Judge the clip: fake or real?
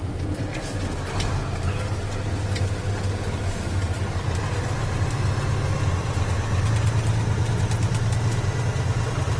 real